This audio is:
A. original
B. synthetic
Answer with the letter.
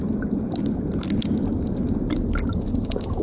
A